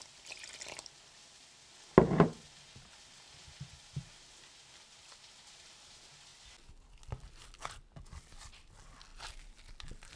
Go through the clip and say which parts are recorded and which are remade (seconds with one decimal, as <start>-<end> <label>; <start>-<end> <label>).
0.0-10.2 recorded